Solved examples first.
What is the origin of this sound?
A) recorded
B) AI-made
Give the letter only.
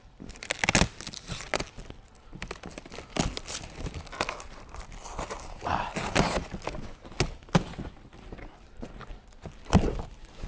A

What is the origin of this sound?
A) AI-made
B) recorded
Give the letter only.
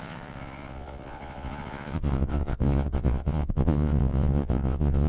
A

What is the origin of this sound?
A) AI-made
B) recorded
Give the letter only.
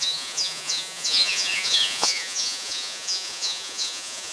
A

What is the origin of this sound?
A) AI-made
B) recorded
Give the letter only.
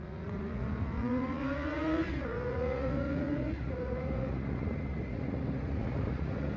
A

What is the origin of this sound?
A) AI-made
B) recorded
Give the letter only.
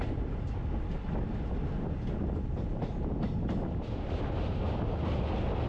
B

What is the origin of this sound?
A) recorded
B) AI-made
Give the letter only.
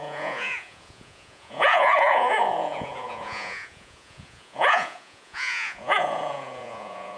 B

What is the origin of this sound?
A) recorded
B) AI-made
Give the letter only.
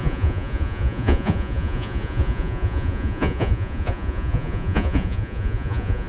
B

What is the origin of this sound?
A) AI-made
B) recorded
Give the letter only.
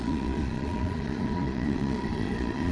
A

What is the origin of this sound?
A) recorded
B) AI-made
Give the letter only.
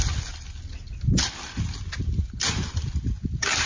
A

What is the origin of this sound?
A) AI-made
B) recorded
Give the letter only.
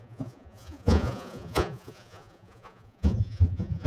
A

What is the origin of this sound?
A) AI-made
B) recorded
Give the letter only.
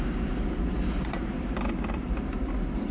B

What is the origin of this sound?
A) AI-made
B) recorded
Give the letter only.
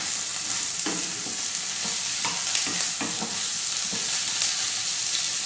B